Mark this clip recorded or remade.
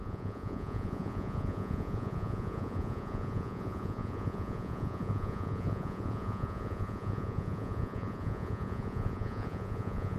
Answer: remade